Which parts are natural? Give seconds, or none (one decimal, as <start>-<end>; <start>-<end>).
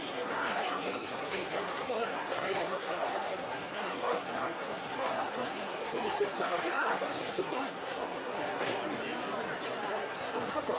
8.8-9.9